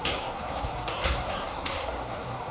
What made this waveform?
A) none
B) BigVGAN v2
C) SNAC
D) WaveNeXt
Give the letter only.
C